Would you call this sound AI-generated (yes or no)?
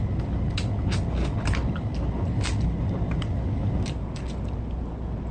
no